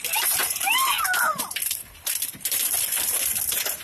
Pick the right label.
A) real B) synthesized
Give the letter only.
B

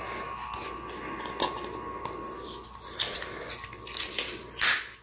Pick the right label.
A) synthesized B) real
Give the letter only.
B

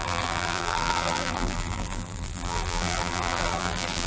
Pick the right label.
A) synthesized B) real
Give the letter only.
A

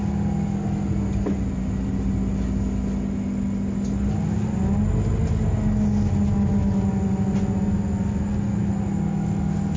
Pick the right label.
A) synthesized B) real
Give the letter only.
B